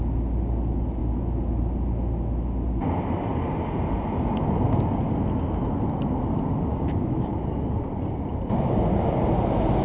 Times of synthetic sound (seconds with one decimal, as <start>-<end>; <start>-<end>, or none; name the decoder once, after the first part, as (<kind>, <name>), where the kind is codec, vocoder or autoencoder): 6.7-7.4 (codec, DAC)